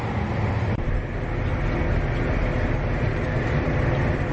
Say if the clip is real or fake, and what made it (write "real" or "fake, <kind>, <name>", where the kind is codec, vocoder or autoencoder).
real